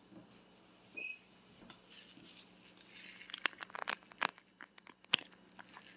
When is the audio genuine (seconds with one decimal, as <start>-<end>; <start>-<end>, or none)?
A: 0.0-4.3; 5.1-6.0